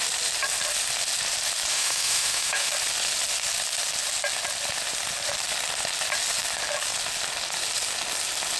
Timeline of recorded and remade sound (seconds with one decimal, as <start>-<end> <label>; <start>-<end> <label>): 0.0-1.7 recorded; 1.7-2.7 remade; 2.7-8.6 recorded